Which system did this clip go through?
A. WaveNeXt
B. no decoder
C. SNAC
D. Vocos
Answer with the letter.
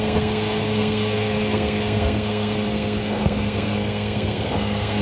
C